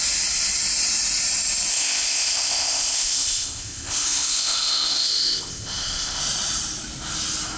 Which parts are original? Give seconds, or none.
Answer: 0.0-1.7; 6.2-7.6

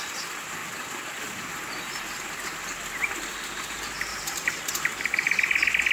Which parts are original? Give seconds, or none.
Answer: 0.0-4.1; 4.7-5.9

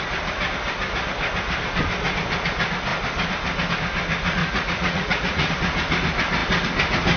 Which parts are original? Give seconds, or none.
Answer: 0.0-4.4; 5.5-7.2

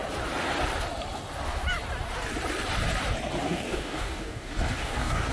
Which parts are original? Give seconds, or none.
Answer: 0.0-3.4

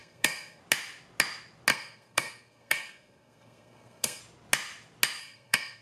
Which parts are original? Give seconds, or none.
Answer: 0.6-1.7; 4.2-5.2

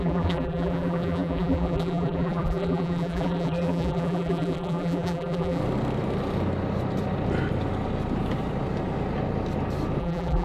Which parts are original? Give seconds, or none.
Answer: 5.6-10.0

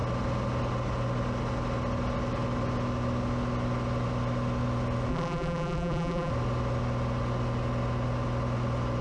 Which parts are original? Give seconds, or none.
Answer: 0.0-5.1; 6.3-9.0